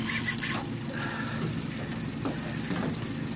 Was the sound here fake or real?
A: real